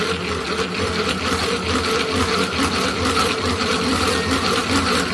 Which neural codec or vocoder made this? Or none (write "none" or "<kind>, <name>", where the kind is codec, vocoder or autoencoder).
none